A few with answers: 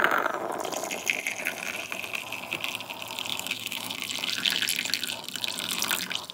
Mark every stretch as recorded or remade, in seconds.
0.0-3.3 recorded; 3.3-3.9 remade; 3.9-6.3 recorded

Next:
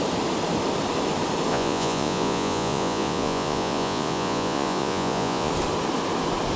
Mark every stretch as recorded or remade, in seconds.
0.0-1.5 recorded; 1.5-5.5 remade; 5.5-6.6 recorded

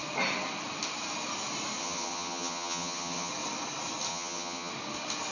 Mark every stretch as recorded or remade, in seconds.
0.0-1.8 recorded; 1.8-3.3 remade; 3.3-4.1 recorded; 4.1-4.7 remade; 4.7-5.3 recorded

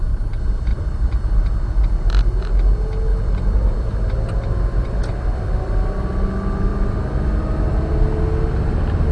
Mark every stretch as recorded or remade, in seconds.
0.0-0.7 recorded; 0.7-1.5 remade; 1.5-3.1 recorded; 3.1-3.7 remade; 3.7-9.1 recorded

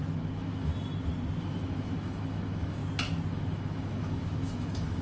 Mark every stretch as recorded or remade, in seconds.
0.0-0.7 remade; 0.7-1.4 recorded; 1.4-2.8 remade; 2.8-3.3 recorded; 3.3-5.0 remade